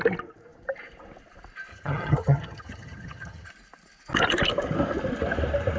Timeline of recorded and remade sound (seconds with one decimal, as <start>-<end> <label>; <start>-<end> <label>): 0.0-1.7 recorded; 1.7-3.5 remade; 3.5-5.8 recorded

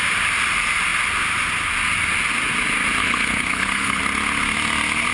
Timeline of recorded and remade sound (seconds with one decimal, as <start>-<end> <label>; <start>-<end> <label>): 0.0-3.0 recorded; 3.0-4.0 remade; 4.0-5.1 recorded

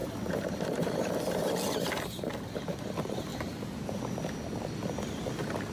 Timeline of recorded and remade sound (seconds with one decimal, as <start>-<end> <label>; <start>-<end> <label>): 0.0-0.6 remade; 0.6-3.3 recorded; 3.3-4.0 remade; 4.0-5.7 recorded

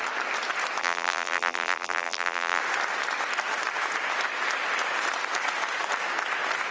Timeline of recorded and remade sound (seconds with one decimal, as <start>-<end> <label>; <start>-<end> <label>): 0.0-0.8 recorded; 0.8-2.6 remade; 2.6-6.7 recorded

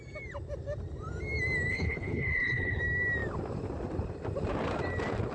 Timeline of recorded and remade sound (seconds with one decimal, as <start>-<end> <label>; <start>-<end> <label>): 0.0-1.7 recorded; 1.7-2.8 remade; 2.8-5.3 recorded